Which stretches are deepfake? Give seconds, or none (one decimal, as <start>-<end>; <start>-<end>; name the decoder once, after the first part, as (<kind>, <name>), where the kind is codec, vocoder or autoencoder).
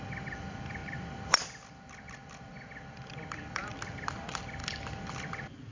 0.0-2.5 (vocoder, BigVGAN v2); 3.1-4.6